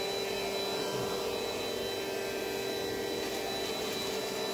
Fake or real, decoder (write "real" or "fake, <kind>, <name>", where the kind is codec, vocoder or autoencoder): real